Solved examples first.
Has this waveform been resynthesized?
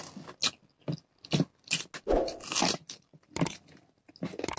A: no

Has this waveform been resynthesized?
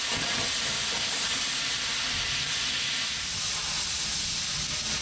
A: no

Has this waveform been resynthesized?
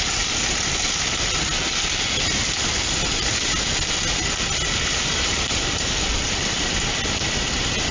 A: no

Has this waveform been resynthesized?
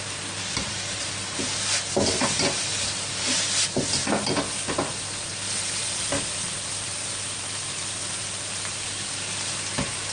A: no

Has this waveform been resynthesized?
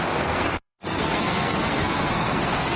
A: yes